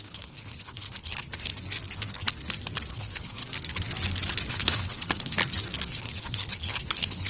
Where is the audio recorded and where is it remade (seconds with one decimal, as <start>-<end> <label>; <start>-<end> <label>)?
0.0-1.5 remade; 1.5-2.9 recorded; 2.9-3.4 remade; 3.4-4.5 recorded; 4.5-5.4 remade; 5.4-5.9 recorded; 5.9-7.3 remade